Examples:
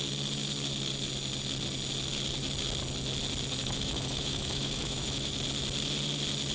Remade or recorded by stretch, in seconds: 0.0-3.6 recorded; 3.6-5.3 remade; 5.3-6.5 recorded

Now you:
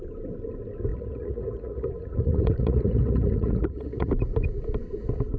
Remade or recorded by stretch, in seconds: 0.0-0.9 recorded; 0.9-4.1 remade; 4.1-5.4 recorded

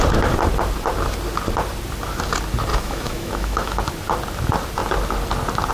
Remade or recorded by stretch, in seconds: 0.0-2.7 recorded; 2.7-3.8 remade; 3.8-5.7 recorded

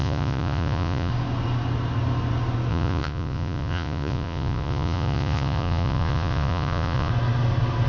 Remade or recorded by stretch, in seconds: 0.0-1.1 remade; 1.1-2.7 recorded; 2.7-7.1 remade; 7.1-7.9 recorded

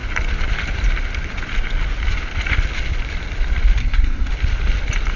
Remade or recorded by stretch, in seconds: 0.0-3.8 recorded; 3.8-4.3 remade; 4.3-5.2 recorded

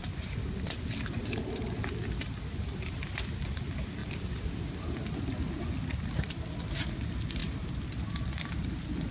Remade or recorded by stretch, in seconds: 0.0-9.1 recorded

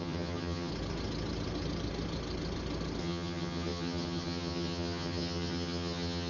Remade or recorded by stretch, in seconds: 0.0-0.7 remade; 0.7-3.0 recorded; 3.0-6.3 remade